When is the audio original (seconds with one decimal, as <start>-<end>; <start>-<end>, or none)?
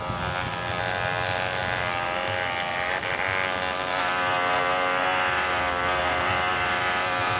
0.0-7.4